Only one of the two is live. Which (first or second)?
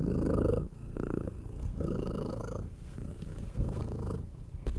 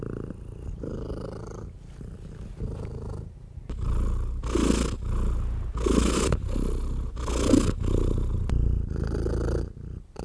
second